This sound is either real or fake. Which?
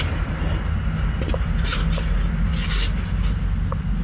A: real